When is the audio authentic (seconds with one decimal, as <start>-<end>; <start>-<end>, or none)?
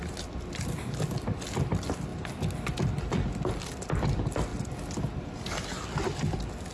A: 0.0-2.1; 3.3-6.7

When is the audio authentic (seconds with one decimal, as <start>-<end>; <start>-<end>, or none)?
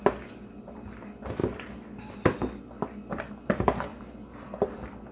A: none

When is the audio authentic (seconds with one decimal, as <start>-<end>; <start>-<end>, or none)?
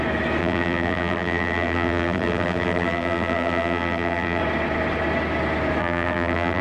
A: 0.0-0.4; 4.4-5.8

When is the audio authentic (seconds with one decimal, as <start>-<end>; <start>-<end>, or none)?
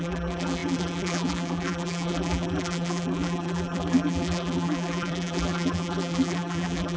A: none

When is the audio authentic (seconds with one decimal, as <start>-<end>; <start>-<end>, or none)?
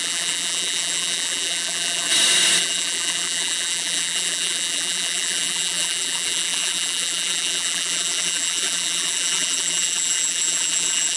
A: 2.1-2.6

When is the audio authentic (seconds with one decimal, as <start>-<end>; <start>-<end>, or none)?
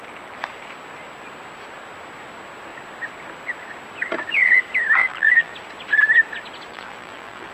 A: 0.0-5.0; 5.5-6.7